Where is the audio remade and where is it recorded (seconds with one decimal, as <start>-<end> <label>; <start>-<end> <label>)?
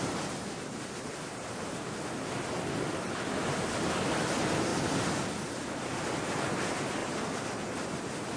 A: 0.0-8.4 recorded